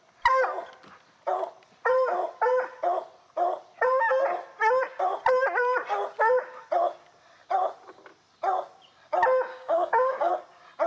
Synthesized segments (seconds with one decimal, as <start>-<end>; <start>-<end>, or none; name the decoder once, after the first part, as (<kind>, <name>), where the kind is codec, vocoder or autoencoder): 9.5-10.3 (codec, DAC)